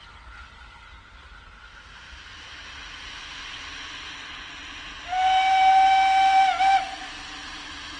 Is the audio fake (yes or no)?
no